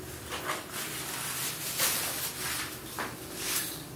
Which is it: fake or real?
real